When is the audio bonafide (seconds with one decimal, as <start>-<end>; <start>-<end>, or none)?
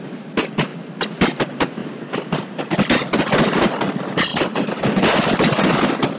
0.0-0.7; 1.4-4.3; 5.8-6.2